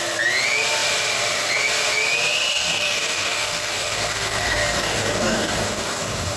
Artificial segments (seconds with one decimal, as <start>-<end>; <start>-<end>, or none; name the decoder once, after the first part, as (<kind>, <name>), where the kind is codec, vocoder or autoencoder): 2.5-6.4 (codec, DAC)